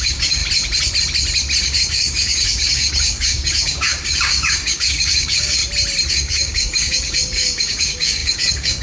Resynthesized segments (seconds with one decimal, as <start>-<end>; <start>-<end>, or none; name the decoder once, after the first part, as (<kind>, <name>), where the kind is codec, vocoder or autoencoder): 0.0-0.4 (codec, DAC); 1.6-5.6; 6.1-8.8